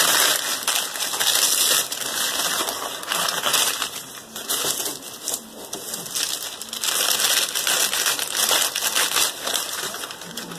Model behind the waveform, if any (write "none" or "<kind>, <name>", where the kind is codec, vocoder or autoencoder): none